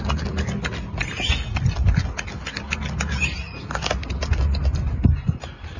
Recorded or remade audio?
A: recorded